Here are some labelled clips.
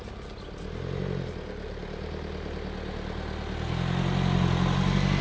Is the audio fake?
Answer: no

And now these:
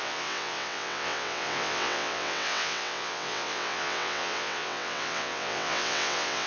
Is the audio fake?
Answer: yes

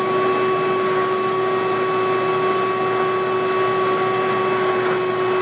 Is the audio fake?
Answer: no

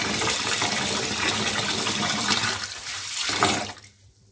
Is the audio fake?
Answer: no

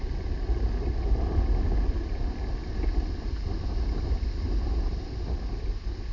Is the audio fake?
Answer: no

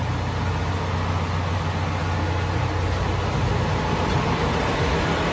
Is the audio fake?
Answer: no